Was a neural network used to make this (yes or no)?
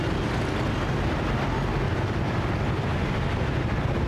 no